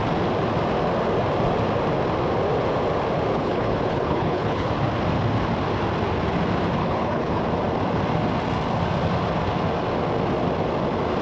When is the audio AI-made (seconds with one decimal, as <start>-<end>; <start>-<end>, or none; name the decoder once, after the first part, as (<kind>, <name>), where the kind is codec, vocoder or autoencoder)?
3.3-4.7 (codec, HILCodec); 6.8-7.4